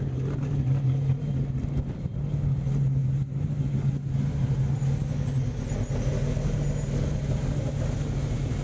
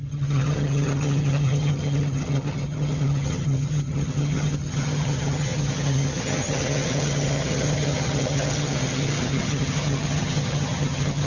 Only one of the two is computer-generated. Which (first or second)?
second